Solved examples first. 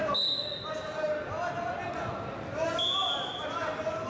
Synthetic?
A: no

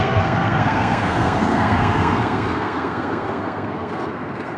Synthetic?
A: yes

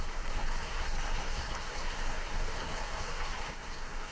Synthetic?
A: yes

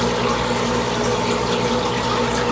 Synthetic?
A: no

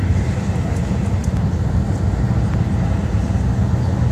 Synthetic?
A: no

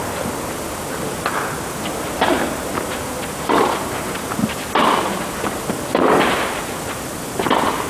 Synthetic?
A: no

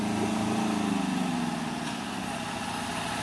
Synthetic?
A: no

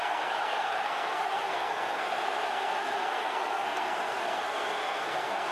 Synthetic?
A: yes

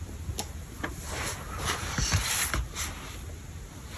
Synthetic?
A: no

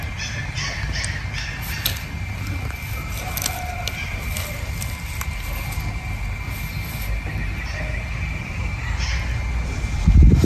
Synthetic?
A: no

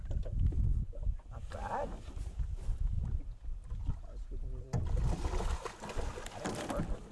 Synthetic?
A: no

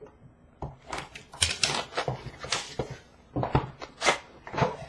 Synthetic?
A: no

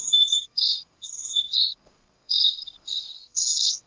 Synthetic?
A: yes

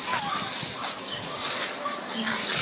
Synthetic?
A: no